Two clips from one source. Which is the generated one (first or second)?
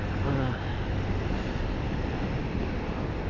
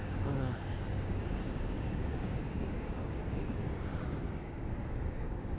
second